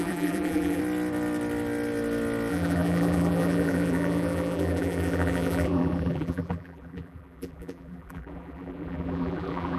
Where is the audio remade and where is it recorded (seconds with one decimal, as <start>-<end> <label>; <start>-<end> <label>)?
0.0-0.8 remade; 0.8-2.5 recorded; 2.5-9.8 remade